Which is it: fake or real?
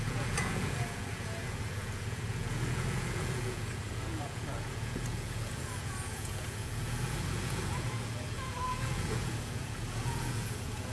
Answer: fake